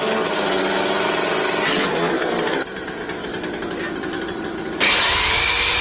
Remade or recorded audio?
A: recorded